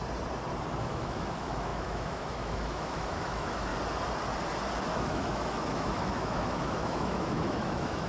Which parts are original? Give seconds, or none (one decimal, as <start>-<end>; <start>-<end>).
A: 0.0-0.8; 3.7-4.8